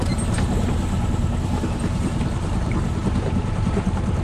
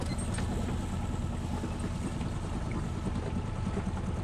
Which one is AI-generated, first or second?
first